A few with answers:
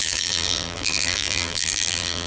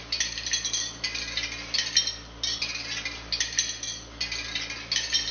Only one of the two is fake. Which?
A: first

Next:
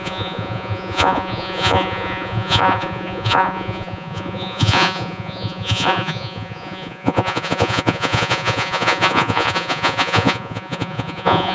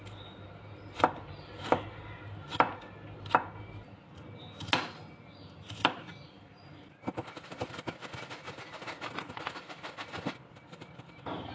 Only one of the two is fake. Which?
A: first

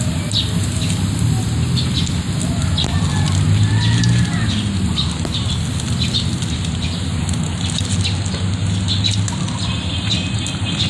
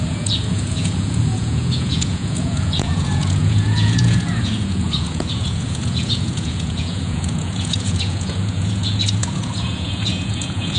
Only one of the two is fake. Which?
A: second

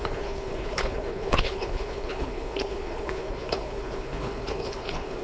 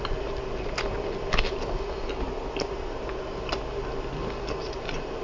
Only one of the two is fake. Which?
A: first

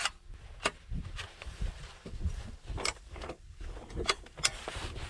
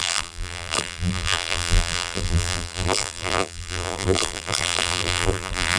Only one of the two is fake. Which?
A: second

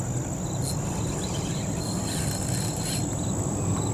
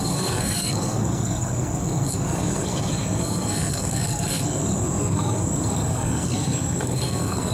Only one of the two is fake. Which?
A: second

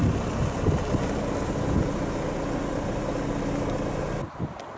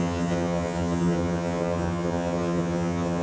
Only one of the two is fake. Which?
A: second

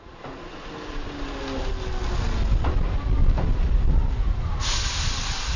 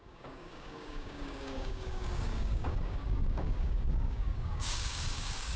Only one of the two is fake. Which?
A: second